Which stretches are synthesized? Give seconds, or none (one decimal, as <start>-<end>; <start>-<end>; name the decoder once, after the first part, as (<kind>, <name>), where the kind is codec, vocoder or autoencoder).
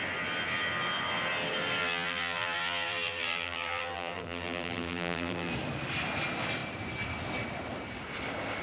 1.8-5.5 (vocoder, BigVGAN v2)